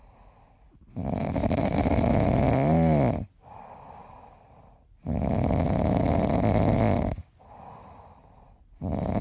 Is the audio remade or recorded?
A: remade